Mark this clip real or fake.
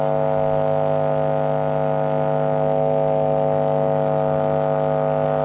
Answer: real